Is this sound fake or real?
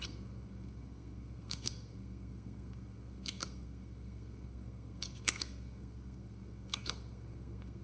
fake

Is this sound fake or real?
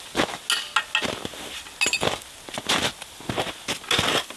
real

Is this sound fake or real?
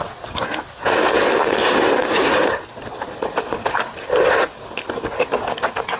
real